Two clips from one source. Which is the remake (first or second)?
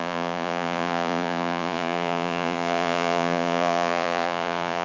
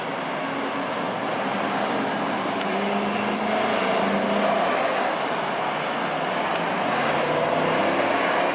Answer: first